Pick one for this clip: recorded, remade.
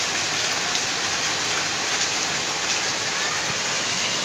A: recorded